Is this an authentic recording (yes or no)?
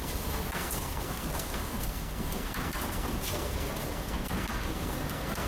no